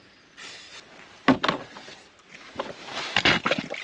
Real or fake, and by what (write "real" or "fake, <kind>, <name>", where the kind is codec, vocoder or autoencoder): real